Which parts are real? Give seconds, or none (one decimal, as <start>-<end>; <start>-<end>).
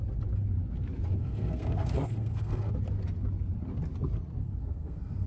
0.0-1.2; 2.7-4.4